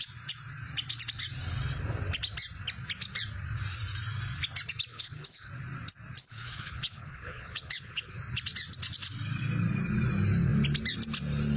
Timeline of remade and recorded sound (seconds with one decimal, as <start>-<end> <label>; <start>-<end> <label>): 0.0-4.9 recorded; 4.9-5.5 remade; 5.5-6.2 recorded; 6.2-8.1 remade; 8.1-11.6 recorded